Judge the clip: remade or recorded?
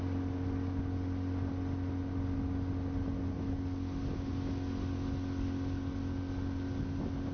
recorded